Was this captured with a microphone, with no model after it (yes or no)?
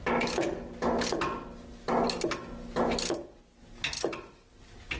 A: yes